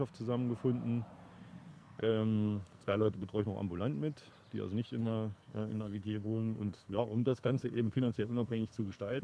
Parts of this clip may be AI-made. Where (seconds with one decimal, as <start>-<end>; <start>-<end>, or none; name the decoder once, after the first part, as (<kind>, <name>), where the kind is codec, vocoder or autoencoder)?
1.7-3.4 (codec, SNAC); 5.0-9.2